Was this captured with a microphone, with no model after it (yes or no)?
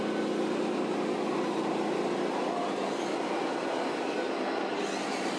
yes